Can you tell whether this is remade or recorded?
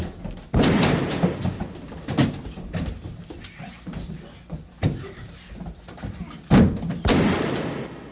recorded